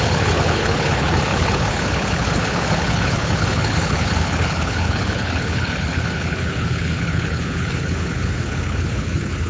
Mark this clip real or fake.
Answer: fake